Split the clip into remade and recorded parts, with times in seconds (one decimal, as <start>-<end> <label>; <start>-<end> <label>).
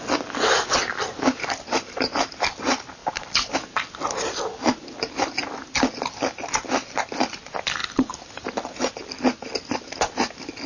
0.0-10.7 recorded